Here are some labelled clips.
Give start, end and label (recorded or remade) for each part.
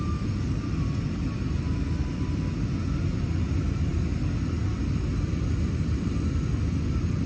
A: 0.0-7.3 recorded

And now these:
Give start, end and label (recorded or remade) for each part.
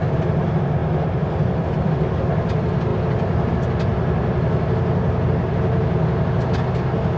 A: 0.0-0.8 recorded; 0.8-1.9 remade; 1.9-2.9 recorded; 2.9-3.5 remade; 3.5-7.2 recorded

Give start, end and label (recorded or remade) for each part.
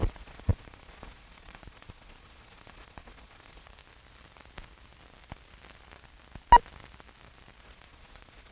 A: 0.0-3.8 remade; 3.8-7.6 recorded; 7.6-8.5 remade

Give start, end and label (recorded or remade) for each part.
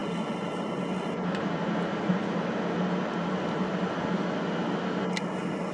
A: 0.0-5.7 recorded